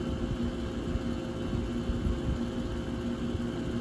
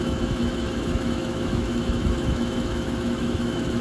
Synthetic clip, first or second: second